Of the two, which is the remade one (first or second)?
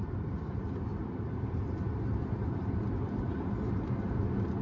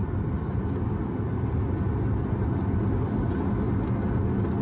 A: first